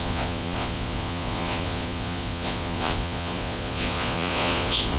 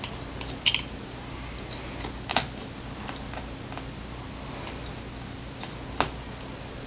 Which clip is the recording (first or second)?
second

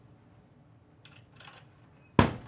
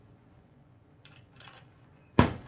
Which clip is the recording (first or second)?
first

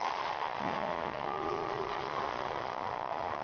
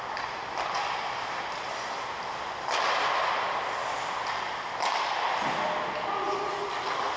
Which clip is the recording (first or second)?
second